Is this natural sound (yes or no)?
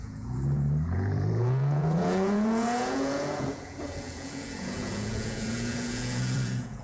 no